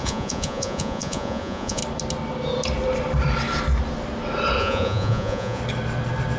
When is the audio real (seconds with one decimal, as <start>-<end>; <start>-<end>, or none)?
1.8-4.6; 5.6-6.4